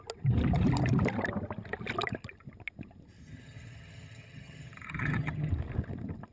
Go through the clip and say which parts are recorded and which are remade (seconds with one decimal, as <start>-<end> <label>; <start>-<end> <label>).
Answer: 0.0-3.2 recorded; 3.2-5.5 remade; 5.5-6.3 recorded